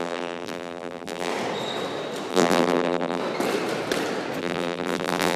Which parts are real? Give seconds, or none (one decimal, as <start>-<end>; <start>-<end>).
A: 1.3-2.3; 3.2-4.4